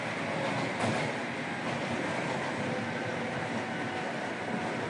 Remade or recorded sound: recorded